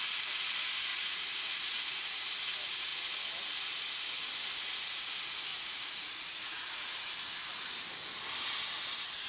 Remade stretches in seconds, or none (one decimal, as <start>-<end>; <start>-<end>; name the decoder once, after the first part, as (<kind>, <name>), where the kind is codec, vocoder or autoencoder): 0.9-2.1 (vocoder, Vocos); 5.5-6.6